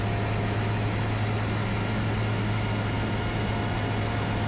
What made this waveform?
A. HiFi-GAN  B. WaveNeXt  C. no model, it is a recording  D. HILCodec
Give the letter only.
C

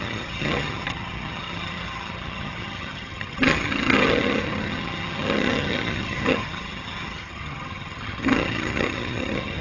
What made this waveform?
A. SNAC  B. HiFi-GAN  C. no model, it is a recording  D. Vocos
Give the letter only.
B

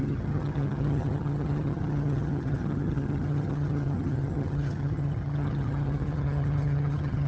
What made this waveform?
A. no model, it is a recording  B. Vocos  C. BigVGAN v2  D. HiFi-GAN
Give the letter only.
D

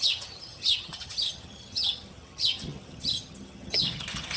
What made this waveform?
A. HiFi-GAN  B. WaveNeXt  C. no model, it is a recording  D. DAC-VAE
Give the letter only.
A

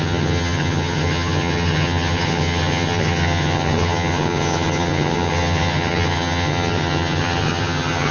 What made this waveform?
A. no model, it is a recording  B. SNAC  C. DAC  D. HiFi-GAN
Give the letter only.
D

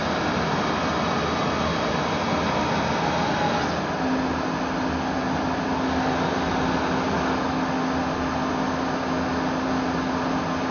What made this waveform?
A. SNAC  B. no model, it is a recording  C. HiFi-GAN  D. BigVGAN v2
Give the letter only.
B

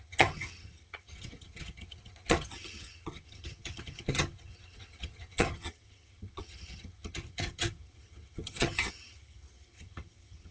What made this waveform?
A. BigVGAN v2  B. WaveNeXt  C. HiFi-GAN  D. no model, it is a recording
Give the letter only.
C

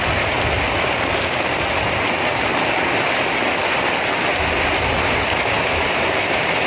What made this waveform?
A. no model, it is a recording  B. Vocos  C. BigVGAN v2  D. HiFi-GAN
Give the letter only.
A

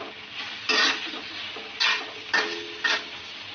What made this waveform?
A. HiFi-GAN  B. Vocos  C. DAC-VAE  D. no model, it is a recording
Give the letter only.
D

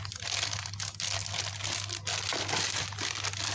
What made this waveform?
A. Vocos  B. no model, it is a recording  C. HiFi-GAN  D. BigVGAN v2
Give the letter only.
B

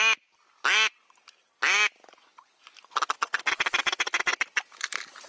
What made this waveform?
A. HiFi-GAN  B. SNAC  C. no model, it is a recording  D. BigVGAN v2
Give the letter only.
C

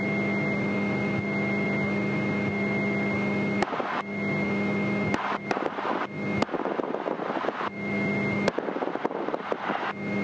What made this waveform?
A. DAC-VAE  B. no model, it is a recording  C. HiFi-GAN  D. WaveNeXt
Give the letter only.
B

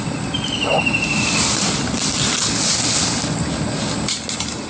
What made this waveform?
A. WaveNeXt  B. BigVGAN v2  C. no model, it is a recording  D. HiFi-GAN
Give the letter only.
C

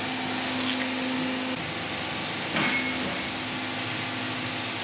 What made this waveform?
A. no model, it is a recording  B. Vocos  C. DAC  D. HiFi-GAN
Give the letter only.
A